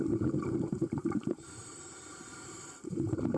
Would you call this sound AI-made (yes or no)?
yes